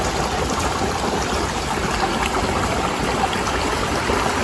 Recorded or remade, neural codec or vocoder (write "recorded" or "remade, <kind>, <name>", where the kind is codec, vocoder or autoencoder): recorded